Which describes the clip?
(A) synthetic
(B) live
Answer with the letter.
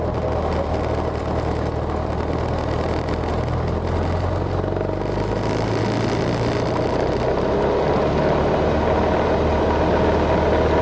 B